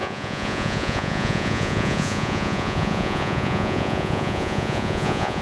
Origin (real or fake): fake